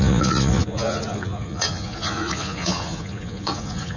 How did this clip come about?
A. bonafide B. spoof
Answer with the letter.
B